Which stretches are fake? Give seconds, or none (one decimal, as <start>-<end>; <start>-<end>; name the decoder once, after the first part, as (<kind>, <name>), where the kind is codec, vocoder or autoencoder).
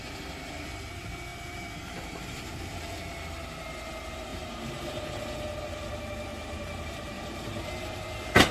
1.3-2.5 (vocoder, BigVGAN v2); 4.3-5.0; 6.3-7.8